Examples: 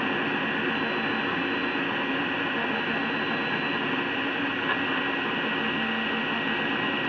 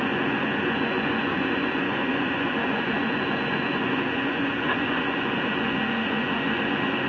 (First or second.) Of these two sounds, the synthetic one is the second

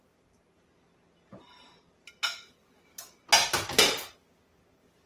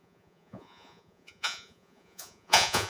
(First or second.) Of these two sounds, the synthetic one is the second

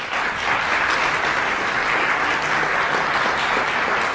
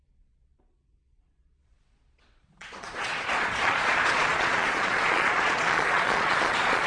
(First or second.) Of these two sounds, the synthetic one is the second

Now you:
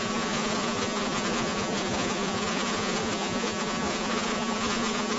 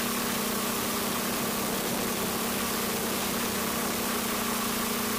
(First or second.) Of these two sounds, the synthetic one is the first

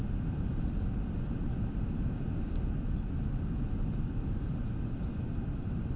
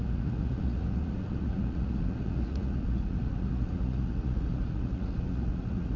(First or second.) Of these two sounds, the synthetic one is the second